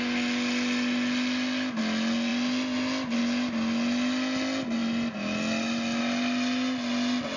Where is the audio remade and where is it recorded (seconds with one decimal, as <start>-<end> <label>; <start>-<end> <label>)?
0.0-7.4 recorded